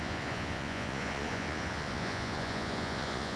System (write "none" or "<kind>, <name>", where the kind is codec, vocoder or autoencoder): vocoder, Vocos